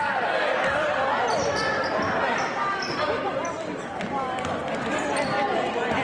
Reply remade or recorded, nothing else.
remade